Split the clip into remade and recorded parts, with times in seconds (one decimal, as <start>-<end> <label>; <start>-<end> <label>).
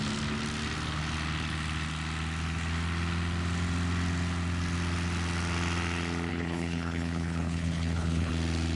0.0-6.3 recorded; 6.3-8.3 remade; 8.3-8.8 recorded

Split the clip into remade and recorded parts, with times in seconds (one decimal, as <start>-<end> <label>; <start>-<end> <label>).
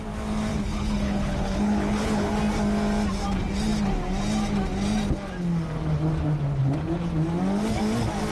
0.0-0.5 recorded; 0.5-2.3 remade; 2.3-8.3 recorded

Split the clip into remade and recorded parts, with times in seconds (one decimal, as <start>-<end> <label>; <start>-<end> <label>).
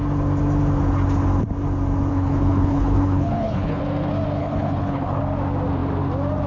0.0-2.1 recorded; 2.1-3.8 remade; 3.8-4.4 recorded; 4.4-5.2 remade; 5.2-6.5 recorded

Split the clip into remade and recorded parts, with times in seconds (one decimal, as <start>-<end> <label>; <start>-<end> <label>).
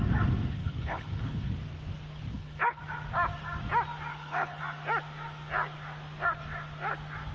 0.0-0.6 recorded; 0.6-1.5 remade; 1.5-2.3 recorded; 2.3-2.8 remade; 2.8-4.1 recorded; 4.1-4.6 remade; 4.6-7.3 recorded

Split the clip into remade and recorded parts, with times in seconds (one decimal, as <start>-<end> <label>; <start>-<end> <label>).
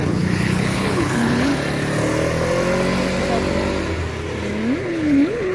0.0-1.5 remade; 1.5-4.8 recorded; 4.8-5.5 remade